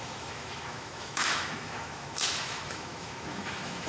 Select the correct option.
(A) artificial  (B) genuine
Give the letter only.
A